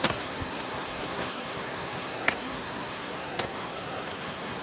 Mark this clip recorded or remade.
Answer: remade